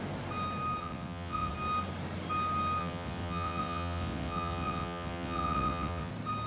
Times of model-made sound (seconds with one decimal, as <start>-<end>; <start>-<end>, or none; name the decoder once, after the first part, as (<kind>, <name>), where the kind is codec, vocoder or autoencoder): 0.8-1.5 (vocoder, WaveNeXt); 2.8-6.1